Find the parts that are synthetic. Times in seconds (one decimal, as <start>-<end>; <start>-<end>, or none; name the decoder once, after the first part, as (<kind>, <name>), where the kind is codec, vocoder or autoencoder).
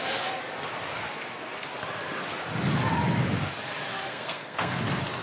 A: 4.0-4.8 (codec, SNAC)